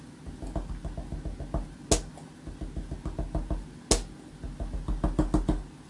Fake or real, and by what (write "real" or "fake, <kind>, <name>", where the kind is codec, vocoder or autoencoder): real